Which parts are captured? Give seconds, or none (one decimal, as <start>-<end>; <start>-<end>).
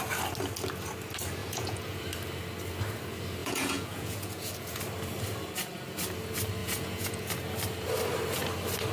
0.0-1.4; 2.0-3.4; 4.8-6.6; 7.3-8.9